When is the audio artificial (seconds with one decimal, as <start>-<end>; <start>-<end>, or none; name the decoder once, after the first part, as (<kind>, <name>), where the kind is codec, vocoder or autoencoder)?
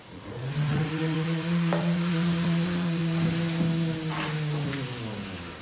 0.0-3.0 (vocoder, Vocos)